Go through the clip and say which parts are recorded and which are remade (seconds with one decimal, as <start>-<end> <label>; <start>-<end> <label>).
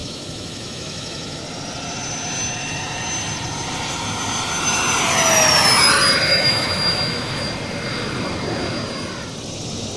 0.0-1.4 remade; 1.4-6.3 recorded; 6.3-7.4 remade; 7.4-10.0 recorded